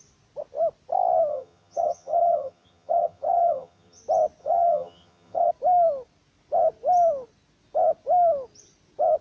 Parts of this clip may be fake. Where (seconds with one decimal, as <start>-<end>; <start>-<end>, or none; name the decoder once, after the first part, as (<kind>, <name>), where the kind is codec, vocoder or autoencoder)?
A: 1.3-4.0 (vocoder, HiFi-GAN); 4.4-5.5